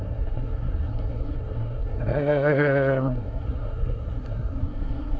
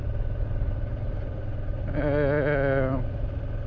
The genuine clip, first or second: second